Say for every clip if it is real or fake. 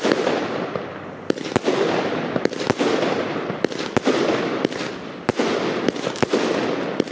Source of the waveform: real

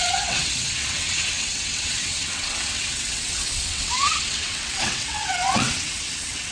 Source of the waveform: fake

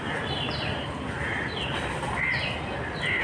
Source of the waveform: real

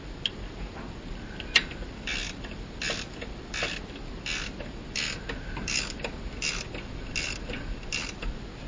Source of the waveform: real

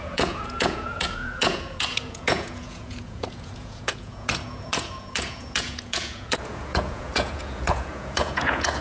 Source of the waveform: fake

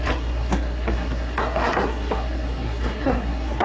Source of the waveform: fake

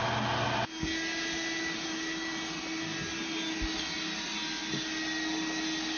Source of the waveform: real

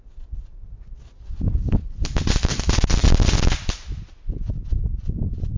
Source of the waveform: real